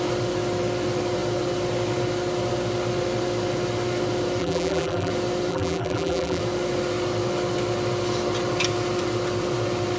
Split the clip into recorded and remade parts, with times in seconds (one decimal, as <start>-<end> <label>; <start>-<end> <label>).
0.0-4.4 recorded; 4.4-5.1 remade; 5.1-5.5 recorded; 5.5-6.4 remade; 6.4-10.0 recorded

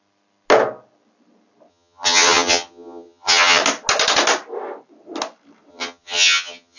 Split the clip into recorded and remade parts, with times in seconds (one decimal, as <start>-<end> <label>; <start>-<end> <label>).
0.0-1.7 recorded; 1.7-3.6 remade; 3.6-5.7 recorded; 5.7-6.8 remade

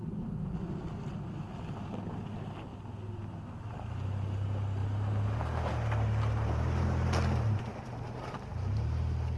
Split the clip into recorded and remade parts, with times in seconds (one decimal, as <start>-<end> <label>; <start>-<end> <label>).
0.0-9.4 recorded

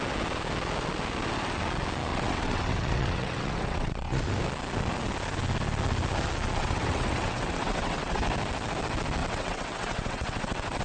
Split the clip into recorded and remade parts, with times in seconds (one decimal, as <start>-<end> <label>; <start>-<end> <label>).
0.0-2.1 recorded; 2.1-4.2 remade; 4.2-6.6 recorded; 6.6-8.2 remade; 8.2-9.2 recorded; 9.2-10.8 remade